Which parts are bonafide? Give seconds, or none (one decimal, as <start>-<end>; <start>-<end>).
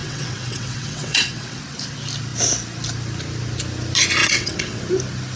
1.6-4.2; 4.8-5.4